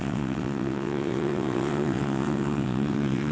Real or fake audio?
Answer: fake